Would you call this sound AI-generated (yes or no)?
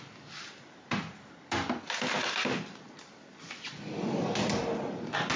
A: no